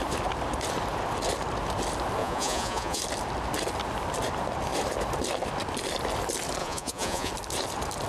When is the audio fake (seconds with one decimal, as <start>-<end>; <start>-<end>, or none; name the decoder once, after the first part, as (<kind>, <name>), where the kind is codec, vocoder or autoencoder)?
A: 2.2-3.0 (vocoder, Vocos); 6.6-7.3